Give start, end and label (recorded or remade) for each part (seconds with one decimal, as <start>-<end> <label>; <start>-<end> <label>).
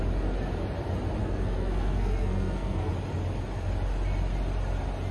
0.0-1.2 recorded; 1.2-2.9 remade; 2.9-5.1 recorded